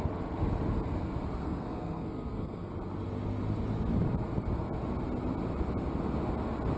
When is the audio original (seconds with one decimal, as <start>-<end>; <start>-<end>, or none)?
0.0-1.4; 2.7-6.8